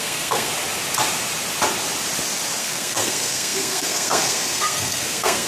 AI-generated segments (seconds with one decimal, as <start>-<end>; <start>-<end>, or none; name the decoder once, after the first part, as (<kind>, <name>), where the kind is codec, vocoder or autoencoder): 0.0-0.5 (codec, SNAC); 2.6-5.5